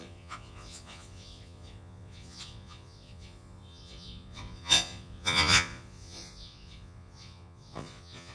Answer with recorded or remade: remade